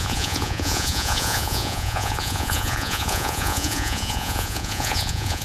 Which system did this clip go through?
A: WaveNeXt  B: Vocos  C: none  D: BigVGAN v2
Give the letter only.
B